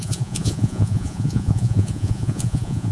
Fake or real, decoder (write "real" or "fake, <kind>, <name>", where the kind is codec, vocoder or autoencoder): fake, vocoder, Vocos